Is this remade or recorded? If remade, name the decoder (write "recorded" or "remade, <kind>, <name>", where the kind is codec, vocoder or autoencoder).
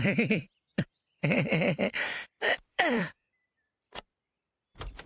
remade, vocoder, BigVGAN v2